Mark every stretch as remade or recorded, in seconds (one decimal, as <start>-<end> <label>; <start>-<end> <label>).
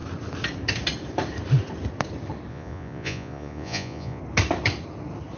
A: 0.0-2.5 recorded; 2.5-4.2 remade; 4.2-5.4 recorded